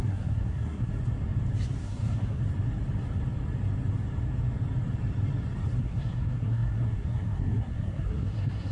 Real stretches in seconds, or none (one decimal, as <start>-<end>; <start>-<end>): 0.9-1.8; 2.4-5.8